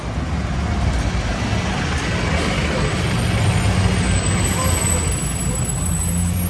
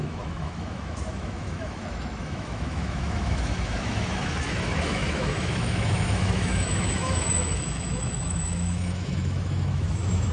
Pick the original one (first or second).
first